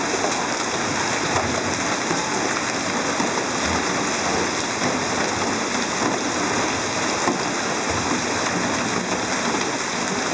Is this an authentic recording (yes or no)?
yes